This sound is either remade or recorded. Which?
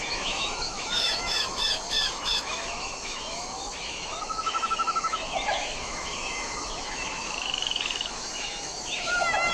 remade